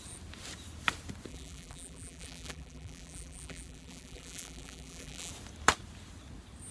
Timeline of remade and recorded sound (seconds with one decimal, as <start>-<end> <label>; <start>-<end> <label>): 0.0-1.3 recorded; 1.3-5.3 remade; 5.3-6.7 recorded